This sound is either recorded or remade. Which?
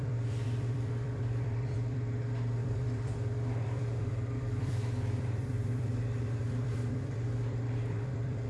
remade